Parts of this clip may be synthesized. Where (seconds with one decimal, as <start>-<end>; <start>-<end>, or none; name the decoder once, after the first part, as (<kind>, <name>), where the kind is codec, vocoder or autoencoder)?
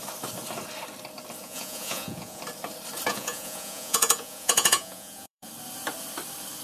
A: 1.4-2.4 (vocoder, Vocos); 3.1-5.5